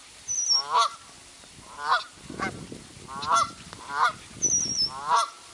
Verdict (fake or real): real